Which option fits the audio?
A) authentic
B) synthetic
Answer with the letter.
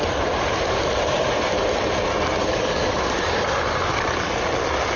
A